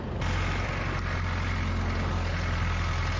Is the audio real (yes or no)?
yes